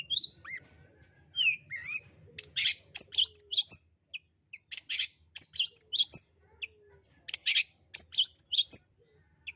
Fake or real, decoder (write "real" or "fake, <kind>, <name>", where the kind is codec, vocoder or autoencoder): real